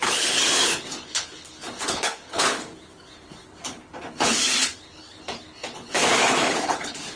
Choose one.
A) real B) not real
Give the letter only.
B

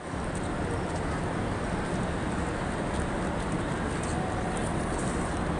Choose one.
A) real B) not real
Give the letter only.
A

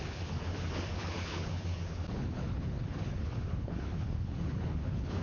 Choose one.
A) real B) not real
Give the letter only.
B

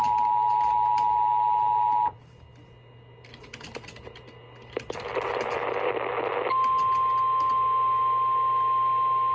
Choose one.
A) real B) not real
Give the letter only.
A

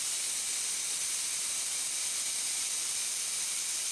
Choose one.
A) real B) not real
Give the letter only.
A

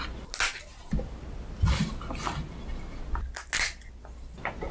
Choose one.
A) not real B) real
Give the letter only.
B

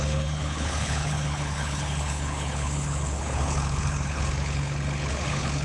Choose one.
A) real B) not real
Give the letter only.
B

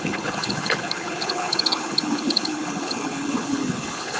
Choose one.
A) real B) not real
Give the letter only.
B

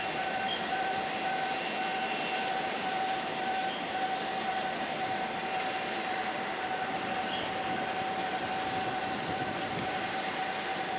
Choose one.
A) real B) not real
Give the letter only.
A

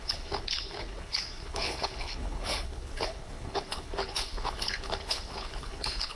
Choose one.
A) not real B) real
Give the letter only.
A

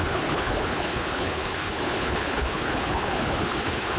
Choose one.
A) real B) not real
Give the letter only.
B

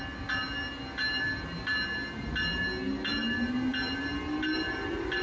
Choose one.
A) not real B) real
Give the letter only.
B